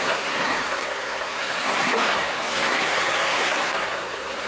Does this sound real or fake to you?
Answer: fake